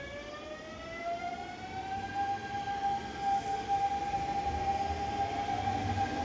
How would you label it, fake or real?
real